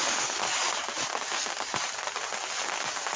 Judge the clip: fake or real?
real